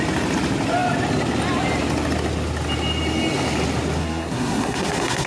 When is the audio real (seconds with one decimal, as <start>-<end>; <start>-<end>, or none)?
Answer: 0.0-4.0